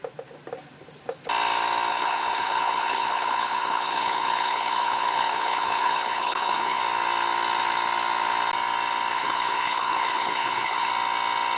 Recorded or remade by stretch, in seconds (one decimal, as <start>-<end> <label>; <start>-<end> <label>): 0.0-1.9 recorded; 1.9-6.8 remade; 6.8-9.1 recorded; 9.1-10.9 remade; 10.9-11.6 recorded